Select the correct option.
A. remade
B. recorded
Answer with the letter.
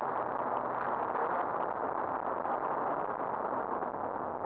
B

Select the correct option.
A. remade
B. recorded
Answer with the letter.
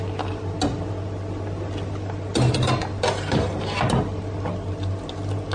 B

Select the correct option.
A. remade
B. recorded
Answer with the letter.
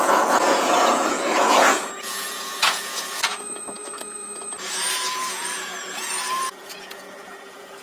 A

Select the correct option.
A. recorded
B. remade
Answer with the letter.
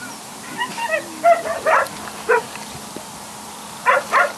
A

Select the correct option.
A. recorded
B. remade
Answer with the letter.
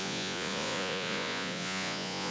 B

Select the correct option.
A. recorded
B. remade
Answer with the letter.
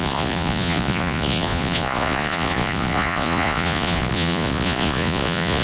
B